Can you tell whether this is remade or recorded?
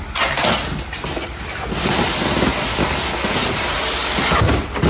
recorded